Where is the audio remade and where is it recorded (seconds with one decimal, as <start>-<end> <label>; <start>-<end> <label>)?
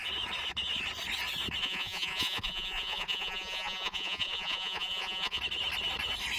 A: 0.0-1.6 recorded; 1.6-5.4 remade; 5.4-6.4 recorded